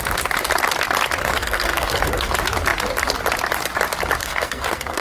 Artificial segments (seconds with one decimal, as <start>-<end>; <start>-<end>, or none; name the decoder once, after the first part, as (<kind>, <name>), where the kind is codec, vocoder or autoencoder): 1.2-2.3 (codec, SNAC); 4.2-5.0